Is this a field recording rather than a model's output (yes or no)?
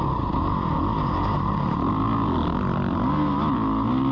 yes